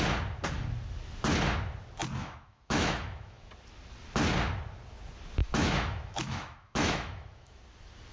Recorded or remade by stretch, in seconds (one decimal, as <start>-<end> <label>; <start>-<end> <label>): 0.0-2.2 recorded; 2.2-3.5 remade; 3.5-5.4 recorded; 5.4-7.6 remade; 7.6-8.1 recorded